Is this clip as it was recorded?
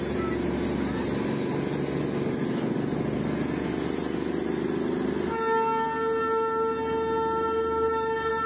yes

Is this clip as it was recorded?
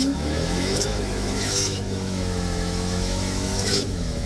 no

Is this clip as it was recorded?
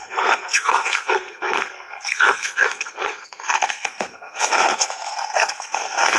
no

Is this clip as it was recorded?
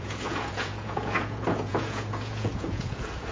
no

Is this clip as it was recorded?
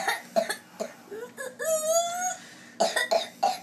yes